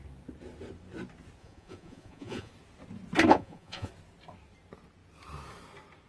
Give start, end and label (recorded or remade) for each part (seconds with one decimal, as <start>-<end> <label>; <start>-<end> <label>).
0.0-1.4 recorded; 1.4-2.5 remade; 2.5-3.3 recorded; 3.3-3.9 remade; 3.9-6.1 recorded